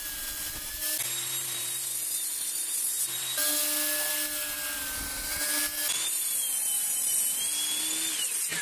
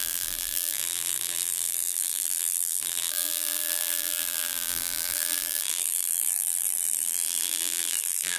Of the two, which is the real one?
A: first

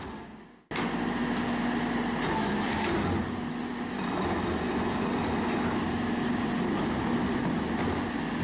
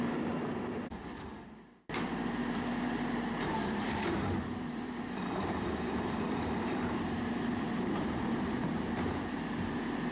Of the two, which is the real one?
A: first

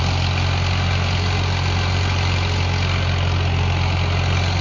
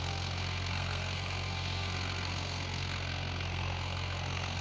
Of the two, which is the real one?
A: first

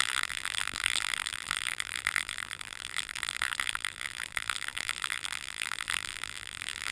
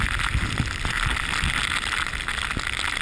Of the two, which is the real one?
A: second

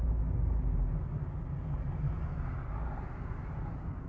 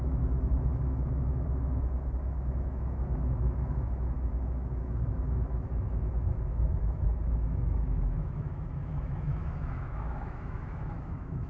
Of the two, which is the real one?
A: first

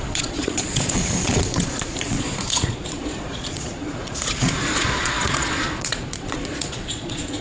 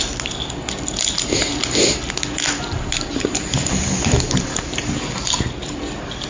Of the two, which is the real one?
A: second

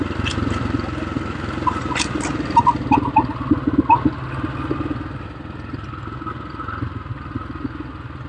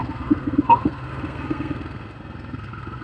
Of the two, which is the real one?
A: first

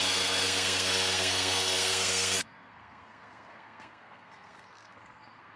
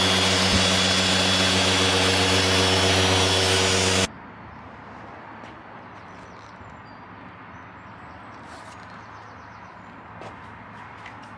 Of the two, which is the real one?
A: second